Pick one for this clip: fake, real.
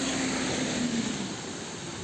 real